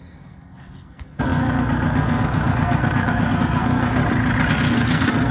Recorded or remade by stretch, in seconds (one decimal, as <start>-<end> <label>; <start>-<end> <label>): 0.0-4.0 remade; 4.0-4.5 recorded; 4.5-5.3 remade